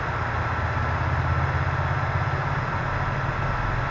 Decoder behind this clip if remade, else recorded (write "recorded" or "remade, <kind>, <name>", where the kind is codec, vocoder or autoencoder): recorded